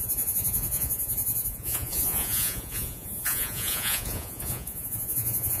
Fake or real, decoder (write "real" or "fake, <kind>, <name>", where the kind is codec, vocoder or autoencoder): fake, vocoder, Vocos